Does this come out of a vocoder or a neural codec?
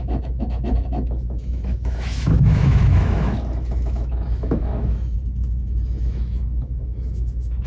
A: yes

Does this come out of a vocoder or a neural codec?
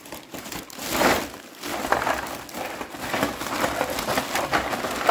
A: no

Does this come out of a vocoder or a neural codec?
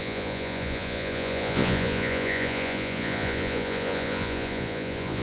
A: yes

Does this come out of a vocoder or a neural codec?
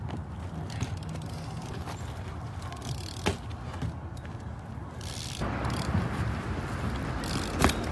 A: no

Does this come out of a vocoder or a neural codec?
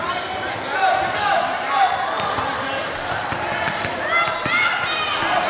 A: no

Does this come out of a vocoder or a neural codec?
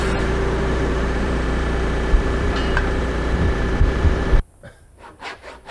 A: yes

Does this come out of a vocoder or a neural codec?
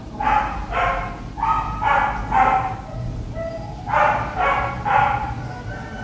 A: no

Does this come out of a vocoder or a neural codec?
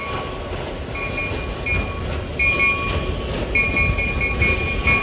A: no